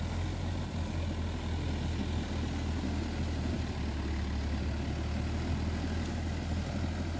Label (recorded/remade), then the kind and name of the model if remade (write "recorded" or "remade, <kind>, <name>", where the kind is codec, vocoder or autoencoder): recorded